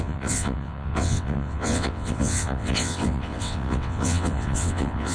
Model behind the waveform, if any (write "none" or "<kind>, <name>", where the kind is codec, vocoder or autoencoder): vocoder, WaveNeXt